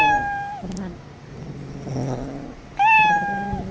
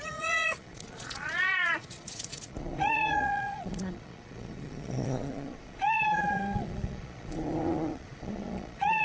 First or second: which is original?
first